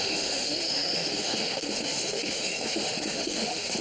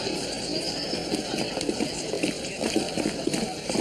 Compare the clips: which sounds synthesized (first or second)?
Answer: first